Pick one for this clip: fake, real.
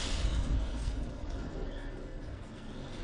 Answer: fake